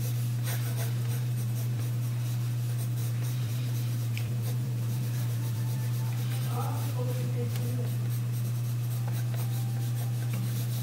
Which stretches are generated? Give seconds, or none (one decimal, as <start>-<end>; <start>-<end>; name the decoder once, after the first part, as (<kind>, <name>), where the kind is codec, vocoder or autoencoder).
1.1-1.8 (vocoder, BigVGAN v2); 3.0-7.7